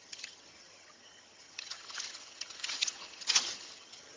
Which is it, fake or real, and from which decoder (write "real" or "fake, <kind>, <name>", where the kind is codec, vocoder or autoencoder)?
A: fake, vocoder, HiFi-GAN